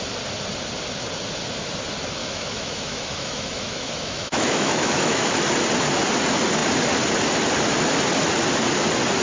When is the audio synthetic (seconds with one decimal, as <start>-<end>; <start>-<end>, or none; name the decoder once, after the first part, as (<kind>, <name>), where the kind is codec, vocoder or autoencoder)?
2.2-5.3 (autoencoder, DAC-VAE)